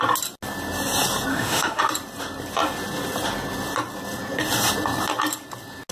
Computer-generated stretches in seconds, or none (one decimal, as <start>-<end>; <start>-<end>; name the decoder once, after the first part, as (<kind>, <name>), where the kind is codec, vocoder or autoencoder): 1.3-1.8 (autoencoder, DAC-VAE)